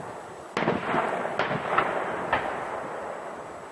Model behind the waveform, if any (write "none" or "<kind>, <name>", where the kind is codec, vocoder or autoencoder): none